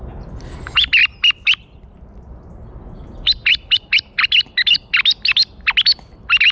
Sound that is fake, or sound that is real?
real